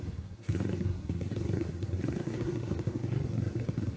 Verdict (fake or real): fake